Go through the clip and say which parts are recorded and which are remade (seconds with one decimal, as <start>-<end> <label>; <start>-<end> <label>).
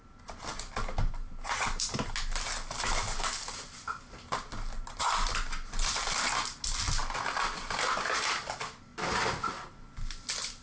0.0-10.6 recorded